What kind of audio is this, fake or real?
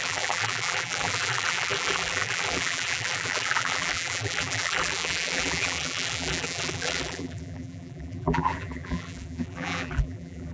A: fake